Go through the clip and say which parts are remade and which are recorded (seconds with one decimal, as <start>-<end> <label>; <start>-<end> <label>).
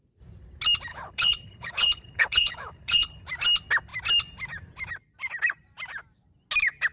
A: 0.0-0.9 recorded; 0.9-3.2 remade; 3.2-6.9 recorded